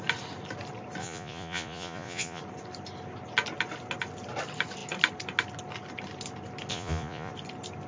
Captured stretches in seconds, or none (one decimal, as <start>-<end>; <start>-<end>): 0.0-1.0; 2.4-6.7; 7.3-7.9